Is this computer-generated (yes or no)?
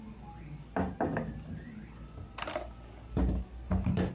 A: yes